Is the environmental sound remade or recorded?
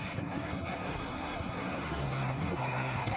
remade